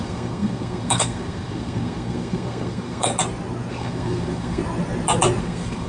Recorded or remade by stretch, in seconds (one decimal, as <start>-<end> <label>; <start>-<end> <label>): 0.0-3.1 remade; 3.1-3.7 recorded; 3.7-4.6 remade; 4.6-5.4 recorded; 5.4-5.9 remade